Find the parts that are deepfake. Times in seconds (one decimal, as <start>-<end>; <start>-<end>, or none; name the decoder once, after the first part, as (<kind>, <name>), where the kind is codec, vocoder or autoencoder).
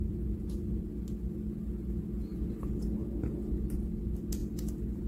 none